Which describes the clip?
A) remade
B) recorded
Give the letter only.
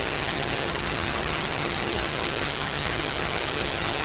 A